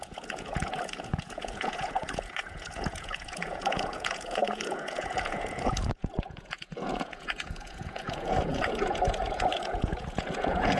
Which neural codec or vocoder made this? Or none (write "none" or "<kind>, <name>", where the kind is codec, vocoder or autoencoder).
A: vocoder, Vocos